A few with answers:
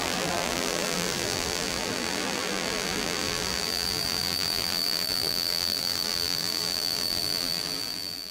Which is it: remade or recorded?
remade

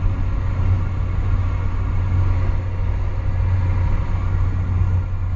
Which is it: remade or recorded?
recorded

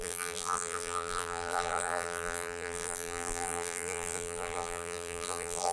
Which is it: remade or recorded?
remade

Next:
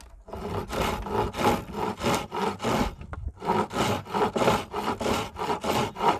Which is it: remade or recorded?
recorded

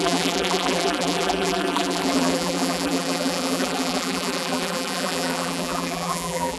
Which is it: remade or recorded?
remade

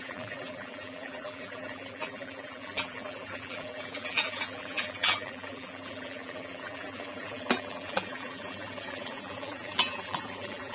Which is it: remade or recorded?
remade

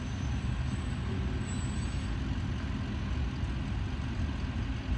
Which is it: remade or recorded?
recorded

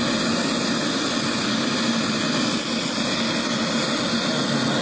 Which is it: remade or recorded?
recorded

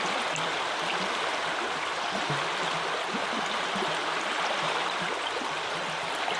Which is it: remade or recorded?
recorded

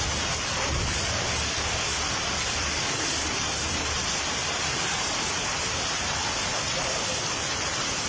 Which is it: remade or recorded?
remade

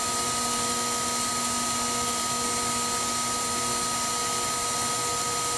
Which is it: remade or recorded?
recorded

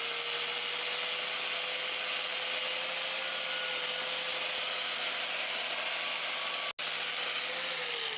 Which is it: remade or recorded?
recorded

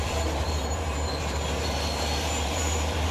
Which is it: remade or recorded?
remade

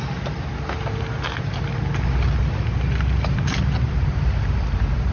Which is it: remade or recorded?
recorded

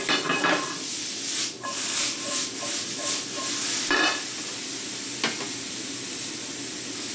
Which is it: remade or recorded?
recorded